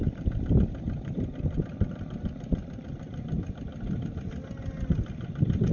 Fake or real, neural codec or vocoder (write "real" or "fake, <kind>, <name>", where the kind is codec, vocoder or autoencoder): real